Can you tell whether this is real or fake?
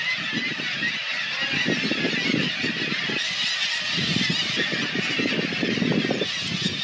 real